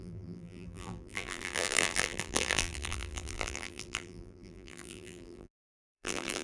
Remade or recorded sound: remade